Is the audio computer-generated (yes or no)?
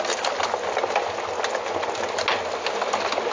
no